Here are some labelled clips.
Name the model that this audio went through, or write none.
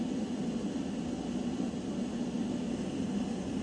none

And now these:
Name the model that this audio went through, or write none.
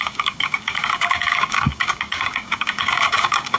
codec, DAC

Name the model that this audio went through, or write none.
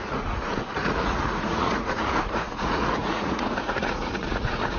vocoder, Vocos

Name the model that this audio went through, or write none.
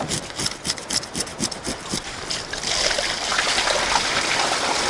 none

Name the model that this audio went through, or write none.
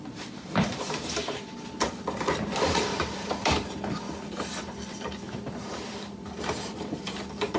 vocoder, BigVGAN v2